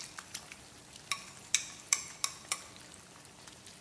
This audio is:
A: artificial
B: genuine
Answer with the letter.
B